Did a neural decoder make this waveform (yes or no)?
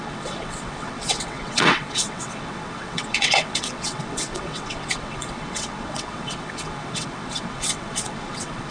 yes